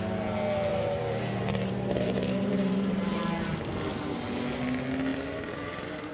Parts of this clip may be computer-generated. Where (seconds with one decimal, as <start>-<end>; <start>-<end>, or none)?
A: 0.7-3.2